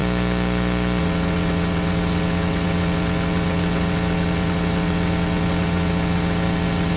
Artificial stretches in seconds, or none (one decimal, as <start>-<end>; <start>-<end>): 1.0-7.0